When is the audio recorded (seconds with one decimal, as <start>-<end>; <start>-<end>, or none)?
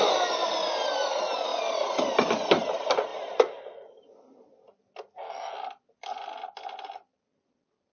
0.0-1.5; 2.1-3.1; 3.6-7.9